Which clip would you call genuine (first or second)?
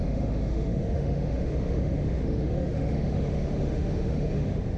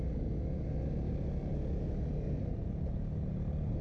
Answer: second